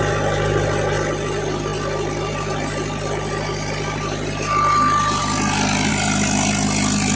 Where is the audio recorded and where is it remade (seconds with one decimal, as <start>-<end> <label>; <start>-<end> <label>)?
0.0-7.2 recorded